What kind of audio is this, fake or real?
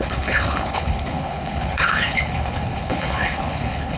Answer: fake